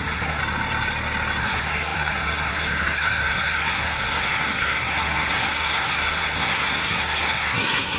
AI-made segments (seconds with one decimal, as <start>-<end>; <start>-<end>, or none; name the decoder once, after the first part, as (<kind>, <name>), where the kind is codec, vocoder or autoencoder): 0.0-0.4 (codec, SNAC); 1.4-8.0